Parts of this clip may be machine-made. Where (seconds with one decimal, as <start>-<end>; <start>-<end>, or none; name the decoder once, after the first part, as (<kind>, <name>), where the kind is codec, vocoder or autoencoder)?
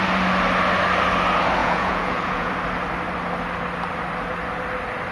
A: 1.6-2.5 (vocoder, Vocos)